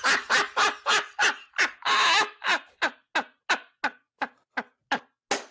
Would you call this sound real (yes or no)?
yes